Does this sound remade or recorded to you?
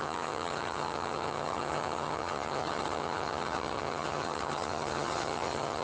remade